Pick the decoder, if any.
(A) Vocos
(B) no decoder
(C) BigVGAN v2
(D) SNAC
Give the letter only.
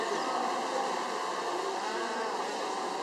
B